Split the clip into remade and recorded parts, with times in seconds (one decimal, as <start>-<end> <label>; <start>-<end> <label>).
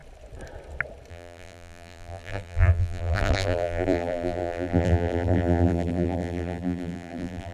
0.0-1.1 recorded; 1.1-7.5 remade